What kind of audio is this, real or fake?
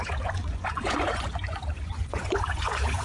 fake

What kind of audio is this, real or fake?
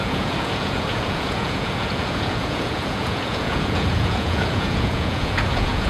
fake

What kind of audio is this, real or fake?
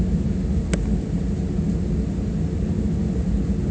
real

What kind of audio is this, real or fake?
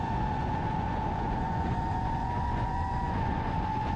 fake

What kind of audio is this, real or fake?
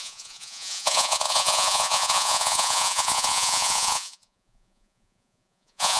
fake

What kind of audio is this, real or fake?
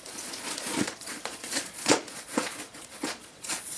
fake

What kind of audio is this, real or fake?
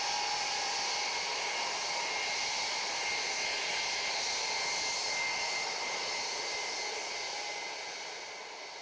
real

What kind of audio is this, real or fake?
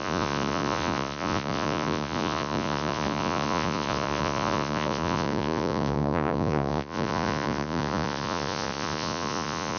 fake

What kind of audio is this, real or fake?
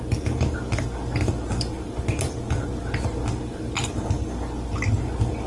real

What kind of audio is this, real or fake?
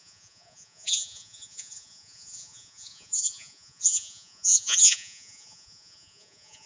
fake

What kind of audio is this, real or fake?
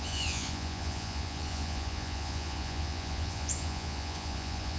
fake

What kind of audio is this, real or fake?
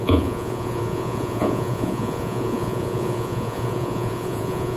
fake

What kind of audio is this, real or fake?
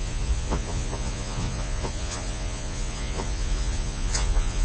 fake